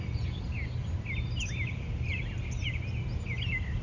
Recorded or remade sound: recorded